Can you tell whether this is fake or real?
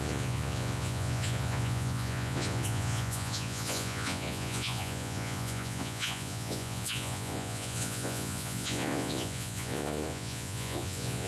fake